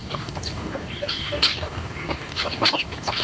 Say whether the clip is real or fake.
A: fake